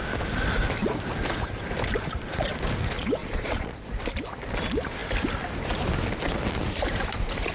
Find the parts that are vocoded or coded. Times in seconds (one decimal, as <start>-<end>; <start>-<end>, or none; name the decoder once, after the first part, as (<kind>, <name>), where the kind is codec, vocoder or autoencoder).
3.2-3.9 (vocoder, Vocos)